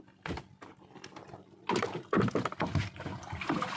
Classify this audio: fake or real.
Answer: fake